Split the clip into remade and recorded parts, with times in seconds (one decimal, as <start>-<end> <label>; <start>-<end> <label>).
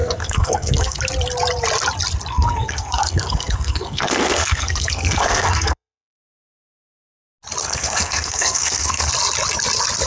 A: 0.0-1.0 remade; 1.0-2.3 recorded; 2.3-6.7 remade; 6.7-7.6 recorded; 7.6-9.1 remade; 9.1-10.1 recorded